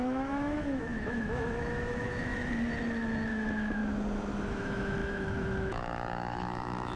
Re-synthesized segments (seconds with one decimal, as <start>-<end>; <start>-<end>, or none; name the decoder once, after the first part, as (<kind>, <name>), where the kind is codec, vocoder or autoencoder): 0.0-2.3 (autoencoder, DAC-VAE); 3.3-3.8; 4.5-7.0